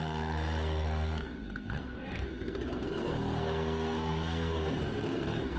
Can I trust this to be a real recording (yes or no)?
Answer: no